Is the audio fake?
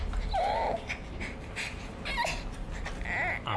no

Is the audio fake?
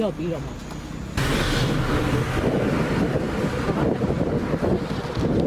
no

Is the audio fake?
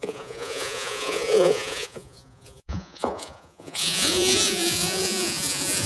yes